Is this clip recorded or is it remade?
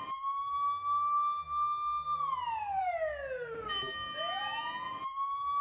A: recorded